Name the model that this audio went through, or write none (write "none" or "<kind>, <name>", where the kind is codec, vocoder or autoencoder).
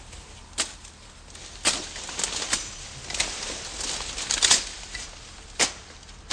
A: none